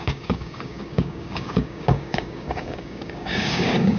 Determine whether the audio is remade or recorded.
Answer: remade